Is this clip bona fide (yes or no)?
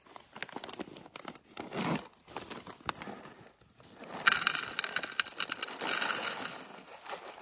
yes